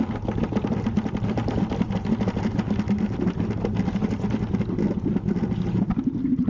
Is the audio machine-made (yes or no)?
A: no